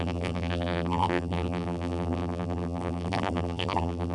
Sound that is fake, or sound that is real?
fake